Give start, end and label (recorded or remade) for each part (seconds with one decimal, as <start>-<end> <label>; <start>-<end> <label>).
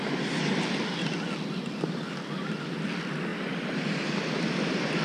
0.0-5.0 recorded